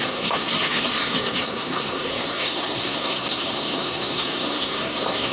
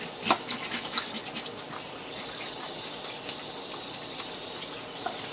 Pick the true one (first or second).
second